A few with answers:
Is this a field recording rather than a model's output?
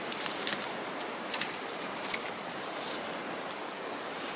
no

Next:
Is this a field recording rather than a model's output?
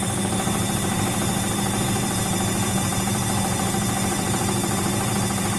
no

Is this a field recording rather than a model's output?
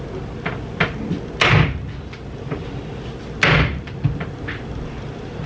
yes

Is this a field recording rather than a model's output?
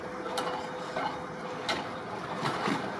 yes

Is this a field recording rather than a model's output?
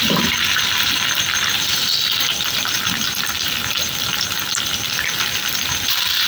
no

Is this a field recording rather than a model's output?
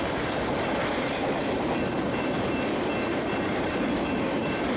no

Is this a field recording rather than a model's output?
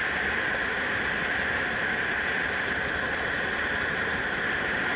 no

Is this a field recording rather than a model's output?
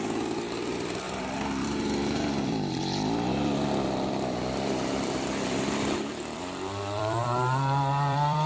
no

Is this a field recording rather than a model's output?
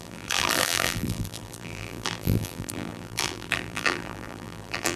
no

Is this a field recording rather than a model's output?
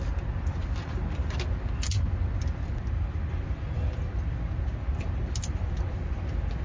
yes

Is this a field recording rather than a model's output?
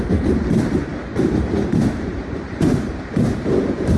no